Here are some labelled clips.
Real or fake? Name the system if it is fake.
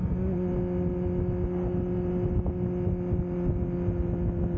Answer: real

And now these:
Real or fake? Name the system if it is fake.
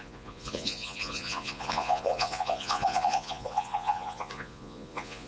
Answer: fake, vocoder, Vocos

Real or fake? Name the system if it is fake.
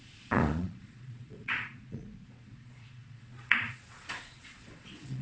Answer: fake, vocoder, Vocos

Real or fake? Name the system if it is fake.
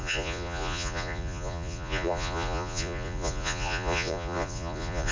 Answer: fake, vocoder, Vocos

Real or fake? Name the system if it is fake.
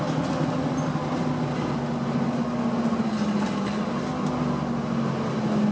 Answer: real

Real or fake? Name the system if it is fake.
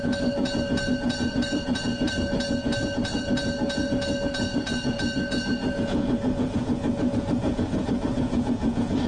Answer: fake, vocoder, Vocos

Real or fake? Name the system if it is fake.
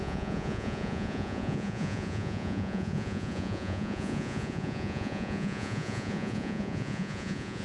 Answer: fake, vocoder, Vocos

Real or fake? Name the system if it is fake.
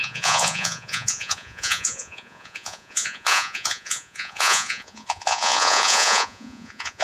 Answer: fake, vocoder, Vocos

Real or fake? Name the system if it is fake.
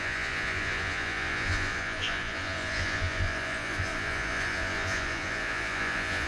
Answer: fake, vocoder, Vocos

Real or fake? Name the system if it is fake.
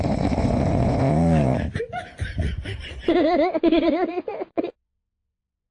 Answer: fake, vocoder, Vocos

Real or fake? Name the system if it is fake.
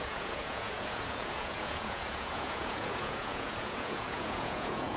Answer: fake, vocoder, Vocos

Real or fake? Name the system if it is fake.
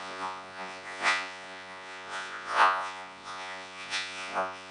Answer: fake, vocoder, Vocos